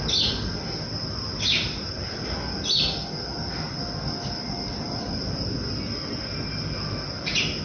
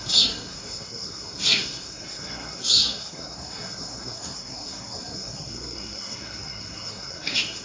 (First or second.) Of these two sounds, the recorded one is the first